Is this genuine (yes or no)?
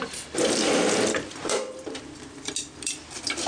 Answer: no